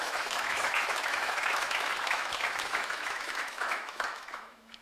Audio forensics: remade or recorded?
remade